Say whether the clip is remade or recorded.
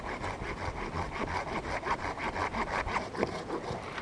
recorded